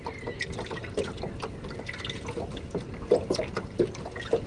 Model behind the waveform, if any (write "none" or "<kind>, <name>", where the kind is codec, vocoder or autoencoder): none